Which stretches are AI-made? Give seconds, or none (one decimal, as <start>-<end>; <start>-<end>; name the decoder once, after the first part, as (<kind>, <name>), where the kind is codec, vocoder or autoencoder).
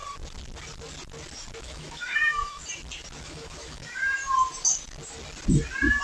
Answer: 1.6-2.6 (autoencoder, DAC-VAE); 3.2-4.2